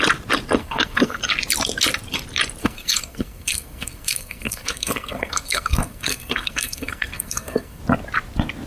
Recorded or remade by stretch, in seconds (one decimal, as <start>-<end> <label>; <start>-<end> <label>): 0.0-0.6 recorded; 0.6-1.2 remade; 1.2-2.6 recorded; 2.6-7.8 remade; 7.8-8.7 recorded